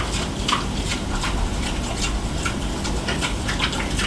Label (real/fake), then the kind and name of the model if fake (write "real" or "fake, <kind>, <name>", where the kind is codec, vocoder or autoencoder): real